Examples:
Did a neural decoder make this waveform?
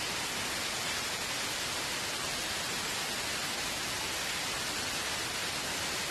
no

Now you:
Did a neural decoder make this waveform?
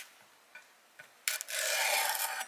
no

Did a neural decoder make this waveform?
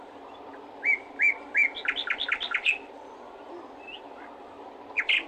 no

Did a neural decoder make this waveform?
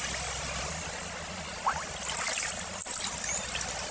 no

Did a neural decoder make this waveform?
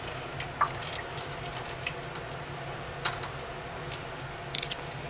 no